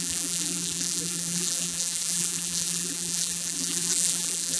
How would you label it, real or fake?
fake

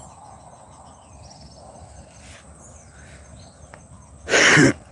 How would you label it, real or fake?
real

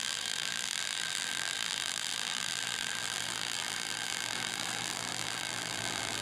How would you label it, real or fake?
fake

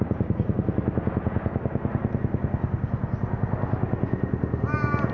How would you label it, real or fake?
real